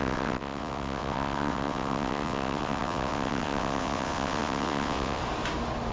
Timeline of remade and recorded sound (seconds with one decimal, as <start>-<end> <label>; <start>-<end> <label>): 0.0-5.2 remade; 5.2-5.9 recorded